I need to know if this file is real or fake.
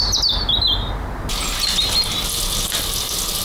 real